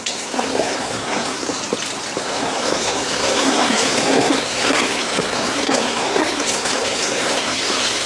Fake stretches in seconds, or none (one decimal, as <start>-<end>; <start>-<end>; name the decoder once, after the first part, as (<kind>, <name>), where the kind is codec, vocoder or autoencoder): 0.0-1.6 (codec, SNAC); 2.2-8.1